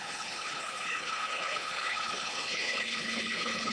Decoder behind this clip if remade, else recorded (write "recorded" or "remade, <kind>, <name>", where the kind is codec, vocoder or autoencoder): remade, codec, HILCodec